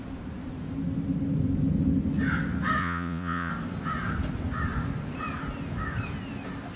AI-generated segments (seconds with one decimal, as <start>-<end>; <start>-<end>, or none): 2.8-3.5